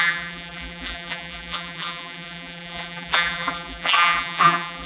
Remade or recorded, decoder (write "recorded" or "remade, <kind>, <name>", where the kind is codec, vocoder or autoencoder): remade, vocoder, BigVGAN v2